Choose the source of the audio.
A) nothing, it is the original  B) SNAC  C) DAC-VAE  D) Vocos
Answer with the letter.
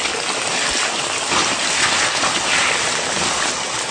A